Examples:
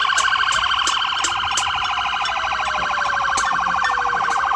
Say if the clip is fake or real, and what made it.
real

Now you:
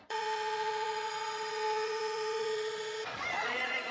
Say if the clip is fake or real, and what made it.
fake, vocoder, Vocos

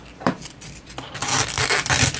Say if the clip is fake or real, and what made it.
fake, vocoder, BigVGAN v2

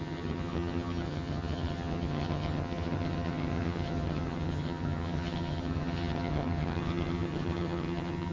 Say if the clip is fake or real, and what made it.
fake, vocoder, HiFi-GAN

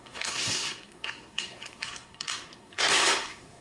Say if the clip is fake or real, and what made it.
fake, codec, SNAC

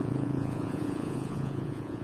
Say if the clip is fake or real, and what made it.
fake, vocoder, Vocos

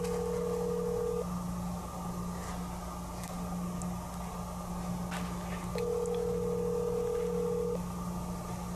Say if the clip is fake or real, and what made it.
real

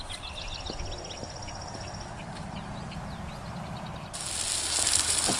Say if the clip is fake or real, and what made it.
real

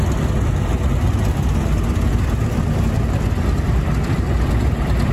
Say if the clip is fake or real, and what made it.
real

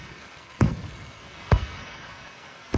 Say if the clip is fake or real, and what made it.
fake, codec, SNAC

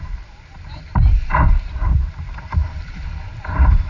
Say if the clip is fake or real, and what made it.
fake, vocoder, BigVGAN v2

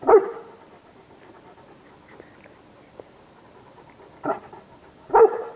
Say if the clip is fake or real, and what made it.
real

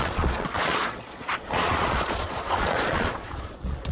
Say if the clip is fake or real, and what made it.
fake, vocoder, Vocos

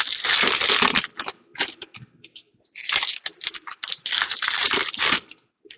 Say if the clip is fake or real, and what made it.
real